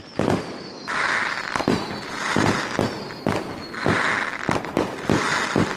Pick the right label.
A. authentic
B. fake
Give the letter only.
A